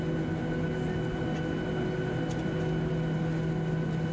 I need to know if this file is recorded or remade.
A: recorded